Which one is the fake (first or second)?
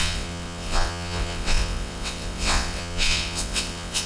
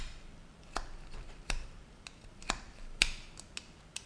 first